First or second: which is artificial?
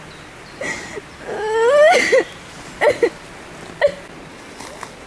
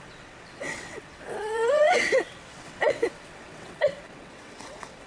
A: second